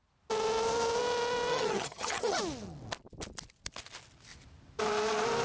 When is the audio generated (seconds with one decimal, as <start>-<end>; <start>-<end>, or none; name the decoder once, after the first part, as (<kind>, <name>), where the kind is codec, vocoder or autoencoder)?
1.5-2.4 (vocoder, HiFi-GAN)